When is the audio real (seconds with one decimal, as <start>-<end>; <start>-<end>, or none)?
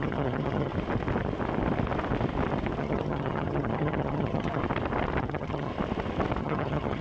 0.7-2.8; 4.6-5.2; 5.7-6.4